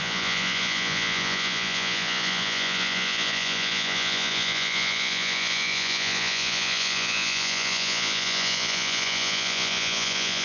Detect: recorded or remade remade